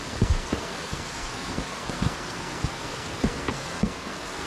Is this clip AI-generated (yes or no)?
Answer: yes